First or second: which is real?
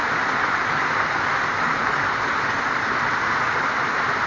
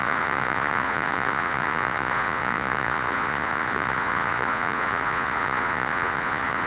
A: first